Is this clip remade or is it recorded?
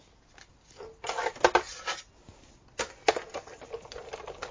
recorded